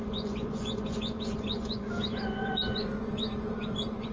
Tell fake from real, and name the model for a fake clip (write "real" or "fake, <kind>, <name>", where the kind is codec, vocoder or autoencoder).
fake, vocoder, Vocos